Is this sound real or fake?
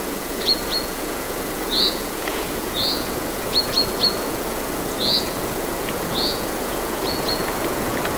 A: fake